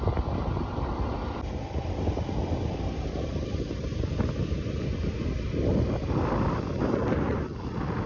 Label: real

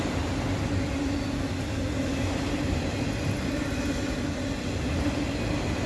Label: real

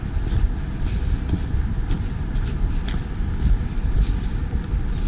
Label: real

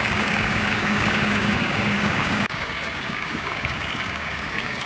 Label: fake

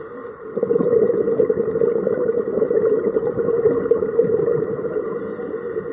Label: real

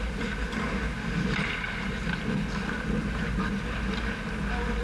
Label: real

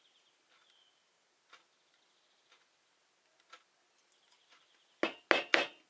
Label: real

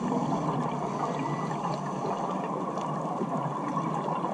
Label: real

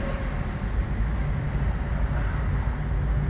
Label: real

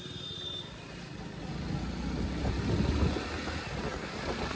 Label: real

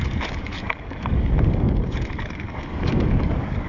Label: fake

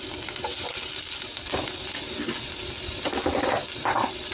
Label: real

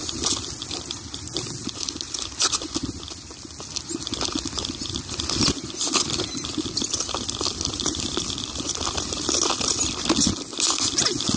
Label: real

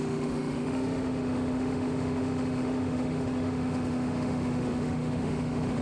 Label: fake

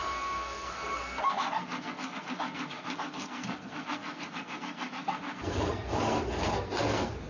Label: fake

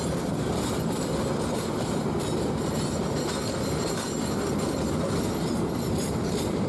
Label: real